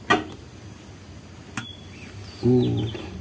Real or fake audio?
real